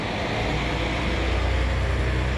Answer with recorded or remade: recorded